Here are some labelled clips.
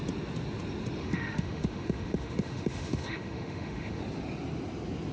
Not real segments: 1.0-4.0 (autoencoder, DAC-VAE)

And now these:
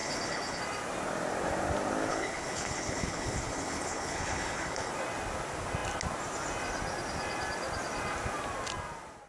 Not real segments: 0.0-0.6 (codec, HILCodec); 2.1-4.9

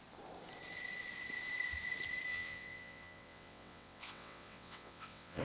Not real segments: 2.3-5.4 (vocoder, WaveNeXt)

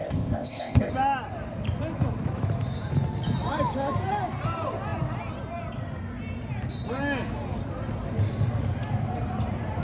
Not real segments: 0.0-0.9 (codec, ZipCodec)